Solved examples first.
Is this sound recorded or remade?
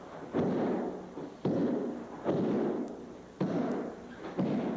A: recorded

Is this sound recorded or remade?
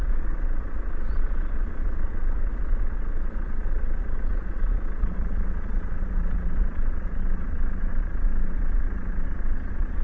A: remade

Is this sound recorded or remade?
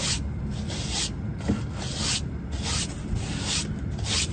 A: recorded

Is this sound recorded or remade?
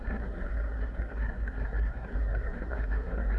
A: remade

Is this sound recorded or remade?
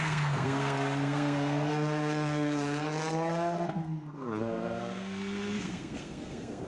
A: remade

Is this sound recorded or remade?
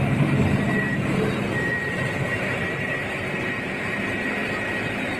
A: remade